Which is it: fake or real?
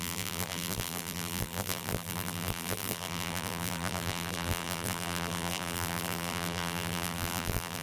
fake